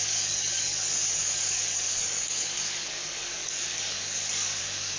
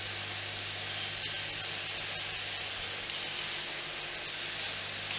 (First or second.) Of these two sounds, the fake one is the first